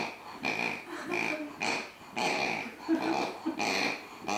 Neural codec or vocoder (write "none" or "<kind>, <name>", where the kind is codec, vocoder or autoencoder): none